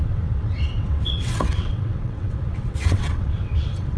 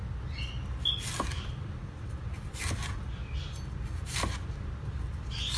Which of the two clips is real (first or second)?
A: second